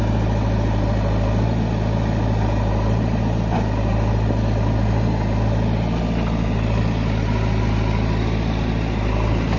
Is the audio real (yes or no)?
yes